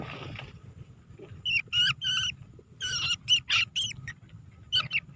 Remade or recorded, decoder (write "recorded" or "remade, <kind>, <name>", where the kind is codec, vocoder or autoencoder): recorded